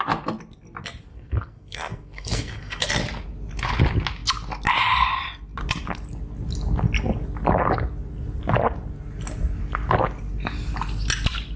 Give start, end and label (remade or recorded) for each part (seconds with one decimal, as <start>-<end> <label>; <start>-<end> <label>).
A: 0.0-1.1 recorded; 1.1-2.9 remade; 2.9-11.6 recorded